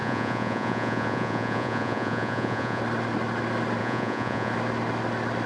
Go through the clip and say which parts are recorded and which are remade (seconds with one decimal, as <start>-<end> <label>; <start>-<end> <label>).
0.0-2.8 remade; 2.8-3.8 recorded; 3.8-4.5 remade; 4.5-5.5 recorded